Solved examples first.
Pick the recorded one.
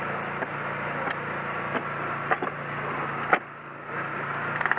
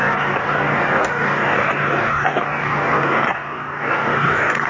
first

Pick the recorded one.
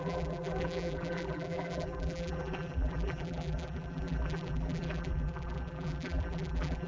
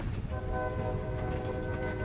second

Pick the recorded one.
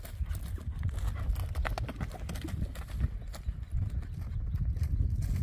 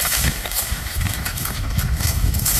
first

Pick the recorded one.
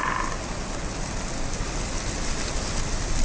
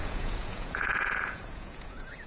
first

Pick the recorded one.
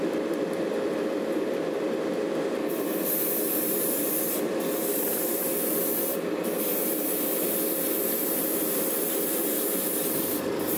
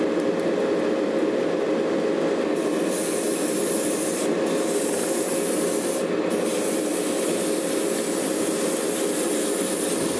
second